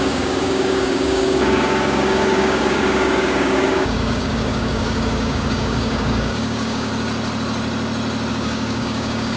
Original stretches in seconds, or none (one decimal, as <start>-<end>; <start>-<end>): 6.9-8.3

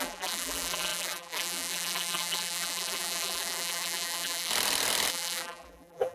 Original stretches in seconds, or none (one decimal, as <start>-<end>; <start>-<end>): 4.5-5.1

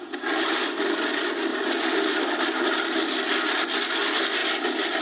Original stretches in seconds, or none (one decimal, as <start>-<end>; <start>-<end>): 0.0-5.0

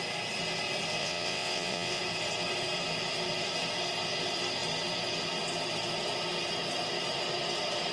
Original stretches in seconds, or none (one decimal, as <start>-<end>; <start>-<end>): 0.0-1.0; 2.0-7.9

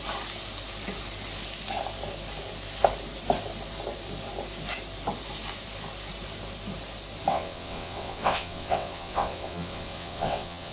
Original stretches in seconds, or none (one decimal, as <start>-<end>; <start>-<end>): 0.0-7.3

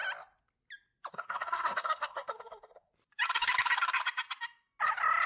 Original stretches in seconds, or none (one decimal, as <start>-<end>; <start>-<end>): 0.0-1.1; 2.9-5.3